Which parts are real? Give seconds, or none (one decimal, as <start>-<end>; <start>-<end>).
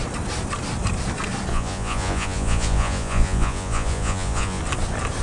0.0-1.5; 4.6-5.2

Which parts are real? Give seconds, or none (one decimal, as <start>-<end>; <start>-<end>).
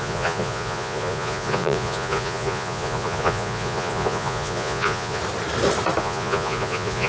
5.2-6.0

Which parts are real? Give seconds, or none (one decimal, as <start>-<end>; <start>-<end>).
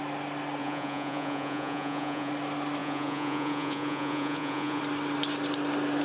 0.0-0.6; 2.3-2.8; 4.8-6.0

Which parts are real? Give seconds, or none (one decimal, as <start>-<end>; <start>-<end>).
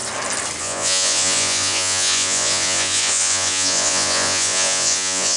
0.0-0.6